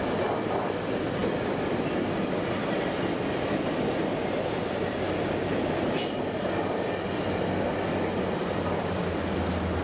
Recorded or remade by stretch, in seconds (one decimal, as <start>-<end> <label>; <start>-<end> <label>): 0.0-9.8 recorded